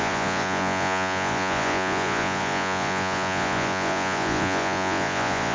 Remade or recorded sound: remade